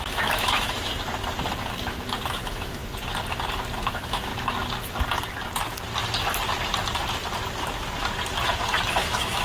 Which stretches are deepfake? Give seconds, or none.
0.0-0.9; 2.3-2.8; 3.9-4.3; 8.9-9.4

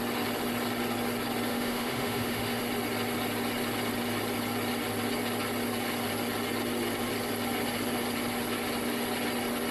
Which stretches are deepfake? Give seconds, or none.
1.5-2.6

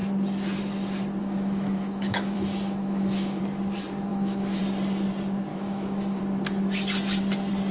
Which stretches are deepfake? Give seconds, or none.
1.2-3.4; 4.1-4.6; 5.5-6.2

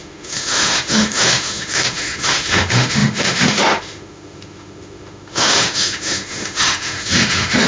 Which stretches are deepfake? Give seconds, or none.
0.0-7.7

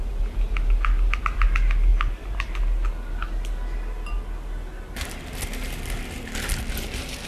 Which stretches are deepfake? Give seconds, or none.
none